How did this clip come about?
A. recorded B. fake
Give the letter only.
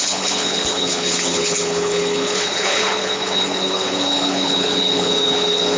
B